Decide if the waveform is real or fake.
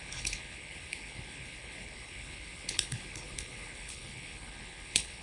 fake